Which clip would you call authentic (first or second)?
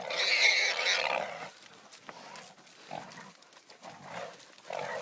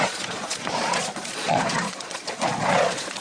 first